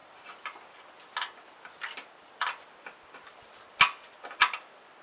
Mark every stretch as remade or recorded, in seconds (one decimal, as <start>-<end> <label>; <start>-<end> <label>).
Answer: 0.0-0.6 remade; 0.6-5.0 recorded